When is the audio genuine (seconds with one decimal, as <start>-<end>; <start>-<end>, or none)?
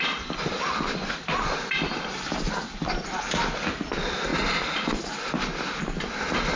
0.0-6.6